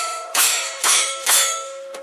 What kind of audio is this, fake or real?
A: fake